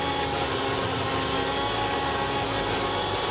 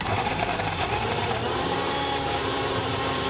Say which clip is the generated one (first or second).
second